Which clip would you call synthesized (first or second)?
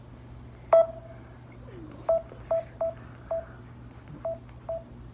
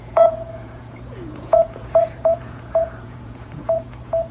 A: second